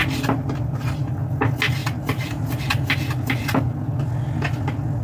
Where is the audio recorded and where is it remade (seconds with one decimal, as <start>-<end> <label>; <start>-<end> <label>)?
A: 0.0-1.1 remade; 1.1-1.8 recorded; 1.8-2.6 remade; 2.6-5.0 recorded